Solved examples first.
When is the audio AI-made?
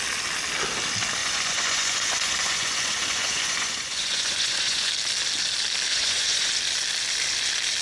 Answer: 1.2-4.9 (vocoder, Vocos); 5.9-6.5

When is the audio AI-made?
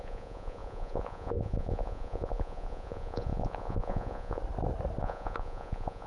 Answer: 0.0-4.4 (vocoder, Vocos); 5.0-6.1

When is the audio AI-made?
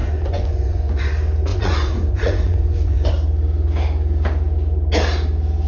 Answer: 0.0-1.1 (vocoder, Vocos); 1.5-3.1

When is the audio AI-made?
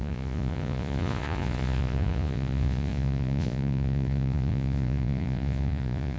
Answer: 0.0-6.2 (vocoder, Vocos)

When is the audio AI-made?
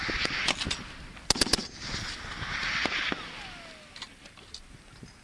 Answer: none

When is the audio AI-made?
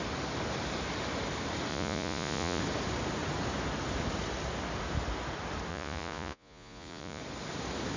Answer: 1.7-2.6 (vocoder, Vocos); 5.7-7.2